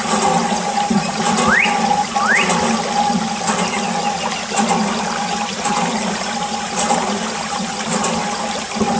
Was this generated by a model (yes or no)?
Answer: no